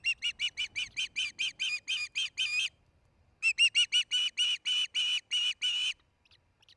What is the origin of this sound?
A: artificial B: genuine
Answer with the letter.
B